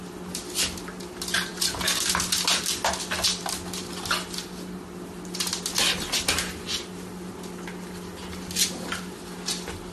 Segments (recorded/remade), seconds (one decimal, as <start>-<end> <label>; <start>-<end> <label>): 0.0-9.9 recorded